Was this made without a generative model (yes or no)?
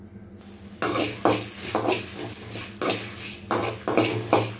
yes